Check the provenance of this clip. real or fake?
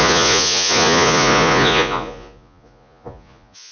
fake